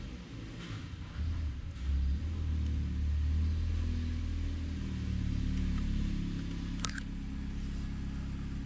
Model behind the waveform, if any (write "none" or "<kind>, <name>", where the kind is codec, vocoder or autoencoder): none